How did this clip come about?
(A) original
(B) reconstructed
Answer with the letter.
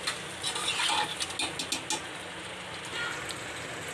A